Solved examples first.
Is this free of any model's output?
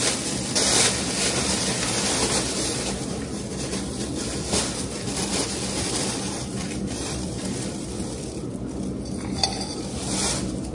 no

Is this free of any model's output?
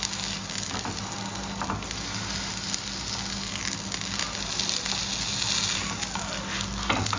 yes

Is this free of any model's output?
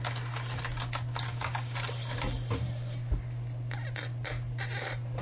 yes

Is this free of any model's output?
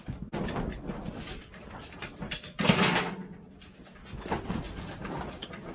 yes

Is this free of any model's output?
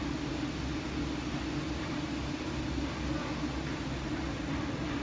yes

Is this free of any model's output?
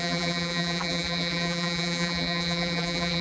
no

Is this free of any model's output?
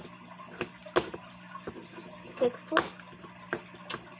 yes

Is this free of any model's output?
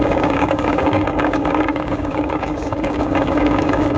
no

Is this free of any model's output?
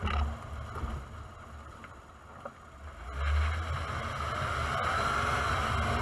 yes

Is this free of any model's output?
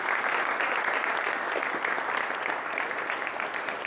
yes